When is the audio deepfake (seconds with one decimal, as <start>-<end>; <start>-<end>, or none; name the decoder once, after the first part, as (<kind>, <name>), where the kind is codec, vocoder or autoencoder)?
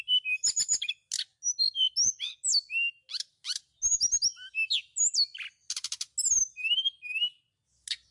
none